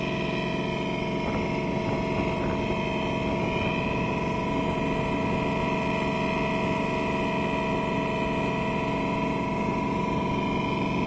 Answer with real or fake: real